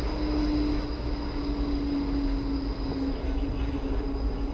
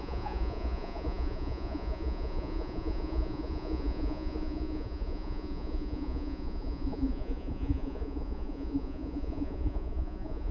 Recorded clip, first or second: first